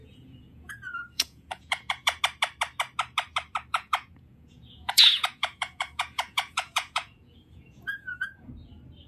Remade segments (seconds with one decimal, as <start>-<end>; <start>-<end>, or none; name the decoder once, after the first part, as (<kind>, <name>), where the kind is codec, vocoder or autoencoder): 0.0-2.2 (vocoder, Vocos); 3.7-8.5